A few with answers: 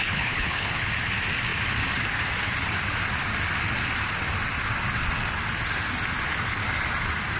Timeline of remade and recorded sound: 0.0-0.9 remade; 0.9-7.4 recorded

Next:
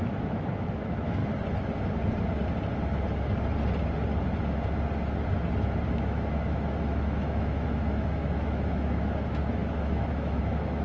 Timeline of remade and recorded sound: 0.0-1.2 remade; 1.2-5.9 recorded; 5.9-10.8 remade